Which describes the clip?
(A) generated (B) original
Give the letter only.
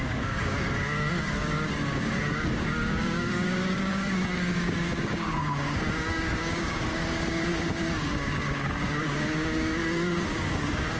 A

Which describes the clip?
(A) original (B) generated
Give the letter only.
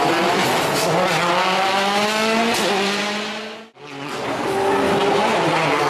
A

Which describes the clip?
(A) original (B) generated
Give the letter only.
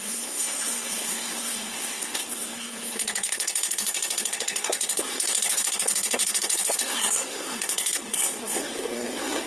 B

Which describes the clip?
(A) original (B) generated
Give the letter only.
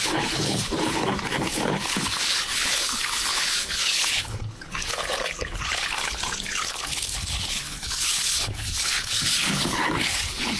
B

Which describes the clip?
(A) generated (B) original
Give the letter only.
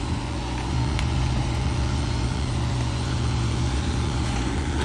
A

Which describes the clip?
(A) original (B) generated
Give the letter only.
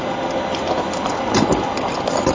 A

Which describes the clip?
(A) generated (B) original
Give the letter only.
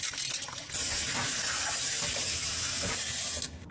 B